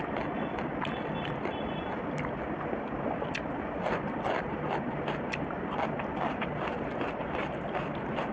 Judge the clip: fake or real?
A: real